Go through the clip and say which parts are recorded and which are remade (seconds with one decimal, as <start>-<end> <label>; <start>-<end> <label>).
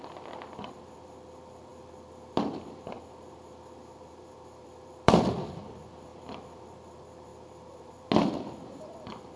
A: 0.0-6.1 remade; 6.1-6.7 recorded; 6.7-7.3 remade; 7.3-8.9 recorded; 8.9-9.4 remade